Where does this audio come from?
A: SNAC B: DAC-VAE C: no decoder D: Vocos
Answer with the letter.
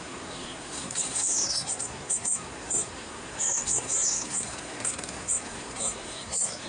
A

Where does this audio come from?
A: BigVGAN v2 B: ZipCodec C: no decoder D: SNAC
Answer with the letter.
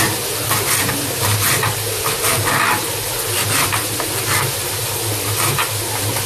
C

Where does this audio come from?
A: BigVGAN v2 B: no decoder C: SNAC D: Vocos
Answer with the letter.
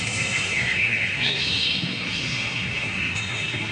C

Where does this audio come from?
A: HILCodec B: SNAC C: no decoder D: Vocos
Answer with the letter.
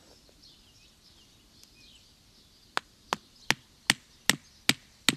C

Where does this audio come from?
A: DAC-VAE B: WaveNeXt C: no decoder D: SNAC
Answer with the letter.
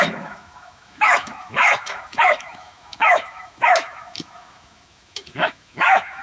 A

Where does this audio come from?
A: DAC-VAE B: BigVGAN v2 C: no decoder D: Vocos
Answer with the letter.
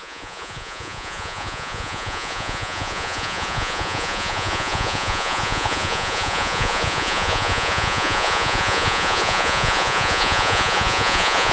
D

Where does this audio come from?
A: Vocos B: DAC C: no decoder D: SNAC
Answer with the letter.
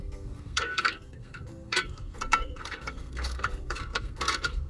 D